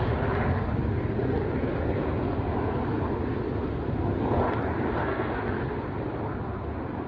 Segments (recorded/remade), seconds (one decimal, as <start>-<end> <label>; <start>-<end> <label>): 0.0-5.0 recorded; 5.0-5.5 remade; 5.5-7.1 recorded